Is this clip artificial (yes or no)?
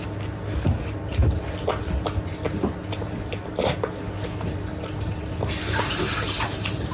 no